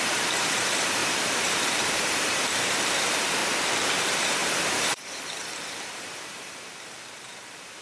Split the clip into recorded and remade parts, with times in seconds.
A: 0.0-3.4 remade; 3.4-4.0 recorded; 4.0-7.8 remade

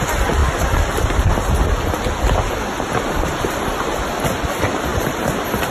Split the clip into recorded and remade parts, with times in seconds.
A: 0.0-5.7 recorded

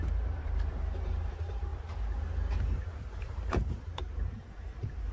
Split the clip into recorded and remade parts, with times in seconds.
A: 0.0-1.7 remade; 1.7-3.2 recorded; 3.2-5.1 remade

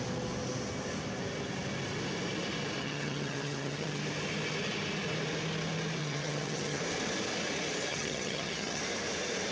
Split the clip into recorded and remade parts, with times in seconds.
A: 0.0-2.8 recorded; 2.8-4.0 remade; 4.0-6.0 recorded; 6.0-6.8 remade; 6.8-7.9 recorded; 7.9-8.8 remade; 8.8-9.5 recorded

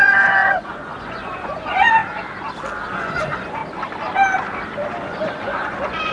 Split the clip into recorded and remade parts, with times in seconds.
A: 0.0-2.0 remade; 2.0-2.9 recorded; 2.9-3.6 remade; 3.6-5.0 recorded; 5.0-6.1 remade

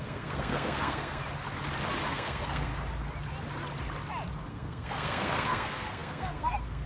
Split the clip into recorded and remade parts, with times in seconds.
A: 0.0-1.2 remade; 1.2-2.1 recorded; 2.1-2.7 remade; 2.7-4.5 recorded; 4.5-6.9 remade

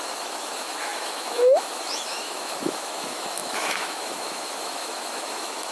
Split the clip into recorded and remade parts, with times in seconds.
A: 0.0-5.7 remade

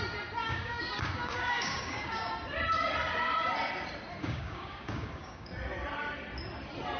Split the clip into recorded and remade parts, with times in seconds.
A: 0.0-0.4 recorded; 0.4-2.3 remade; 2.3-4.2 recorded; 4.2-5.5 remade; 5.5-7.0 recorded